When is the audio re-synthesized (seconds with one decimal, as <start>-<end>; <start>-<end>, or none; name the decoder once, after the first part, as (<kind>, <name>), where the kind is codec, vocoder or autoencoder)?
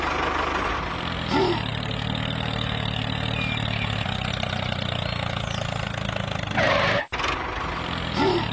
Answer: none